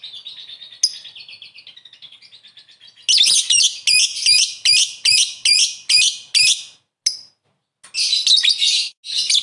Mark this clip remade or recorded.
recorded